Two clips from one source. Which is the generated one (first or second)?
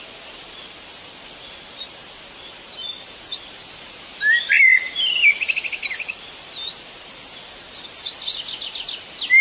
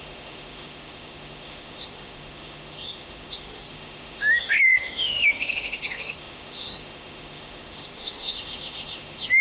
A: second